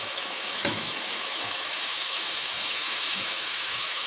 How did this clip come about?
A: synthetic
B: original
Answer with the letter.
A